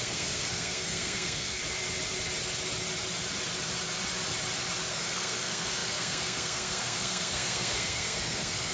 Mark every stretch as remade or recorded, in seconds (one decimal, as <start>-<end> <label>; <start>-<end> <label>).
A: 0.0-1.6 remade; 1.6-4.9 recorded; 4.9-8.7 remade